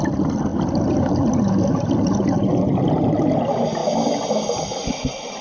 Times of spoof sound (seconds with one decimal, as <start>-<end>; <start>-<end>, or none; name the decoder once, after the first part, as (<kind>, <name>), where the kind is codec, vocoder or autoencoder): none